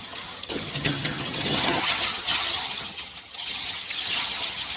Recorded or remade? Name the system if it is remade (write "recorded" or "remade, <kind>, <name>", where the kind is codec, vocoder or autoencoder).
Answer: remade, vocoder, HiFi-GAN